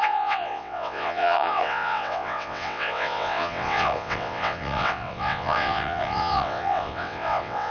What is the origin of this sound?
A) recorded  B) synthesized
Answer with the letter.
B